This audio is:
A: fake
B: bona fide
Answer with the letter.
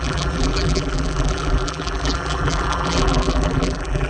A